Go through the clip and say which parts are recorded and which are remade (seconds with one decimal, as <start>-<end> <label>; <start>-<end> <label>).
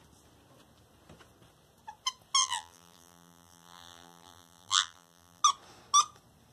0.0-2.4 recorded; 2.4-5.4 remade; 5.4-6.5 recorded